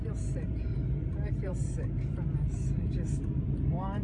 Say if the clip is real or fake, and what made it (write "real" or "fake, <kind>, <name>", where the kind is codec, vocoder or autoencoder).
fake, vocoder, BigVGAN v2